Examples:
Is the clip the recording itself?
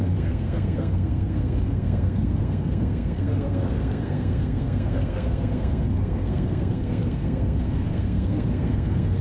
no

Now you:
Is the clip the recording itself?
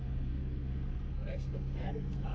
no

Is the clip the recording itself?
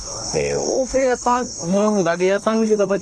no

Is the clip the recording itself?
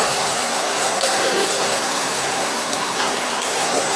no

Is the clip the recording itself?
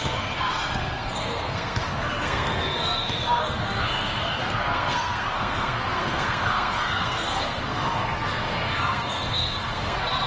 no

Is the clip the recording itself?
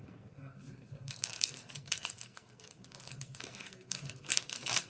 no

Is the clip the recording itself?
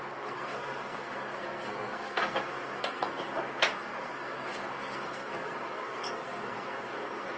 no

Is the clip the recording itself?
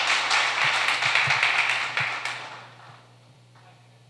yes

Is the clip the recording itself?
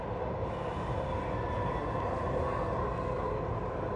yes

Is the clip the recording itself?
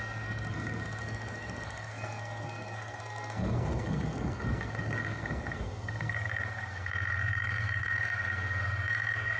no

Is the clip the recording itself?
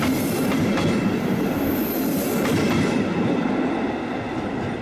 yes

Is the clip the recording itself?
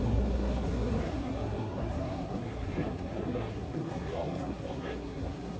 no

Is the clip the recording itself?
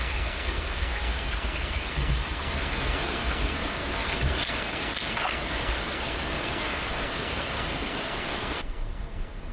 no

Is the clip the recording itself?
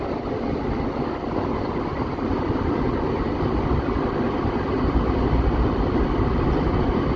yes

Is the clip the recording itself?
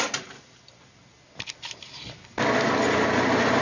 yes